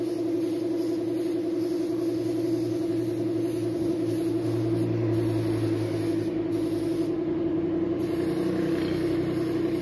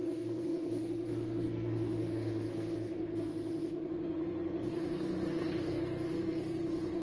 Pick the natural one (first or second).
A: first